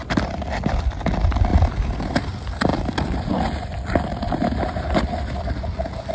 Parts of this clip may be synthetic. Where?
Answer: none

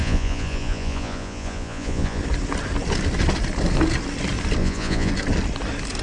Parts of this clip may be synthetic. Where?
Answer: 0.0-2.2 (vocoder, Vocos); 4.6-5.1

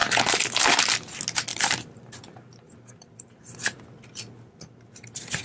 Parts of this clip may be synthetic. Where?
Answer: 1.5-3.4 (vocoder, BigVGAN v2)

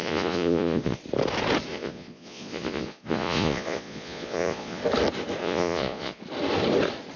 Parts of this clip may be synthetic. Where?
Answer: 0.0-1.0 (vocoder, Vocos); 1.7-4.8; 5.4-6.2

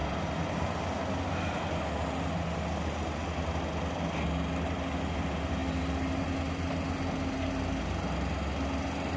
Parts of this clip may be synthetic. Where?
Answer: none

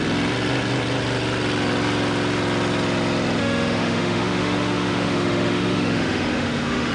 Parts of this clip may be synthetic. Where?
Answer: 3.4-6.9 (autoencoder, DAC-VAE)

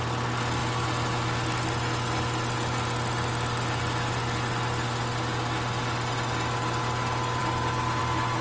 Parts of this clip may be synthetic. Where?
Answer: none